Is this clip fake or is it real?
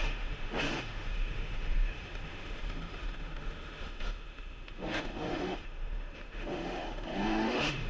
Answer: fake